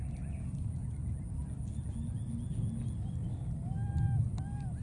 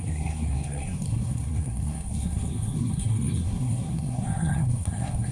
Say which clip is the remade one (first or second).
second